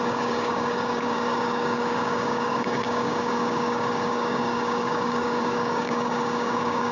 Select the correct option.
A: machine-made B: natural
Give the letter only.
A